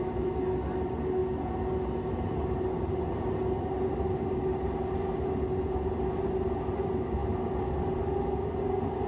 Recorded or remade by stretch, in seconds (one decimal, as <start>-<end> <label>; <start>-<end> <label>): 0.0-9.1 recorded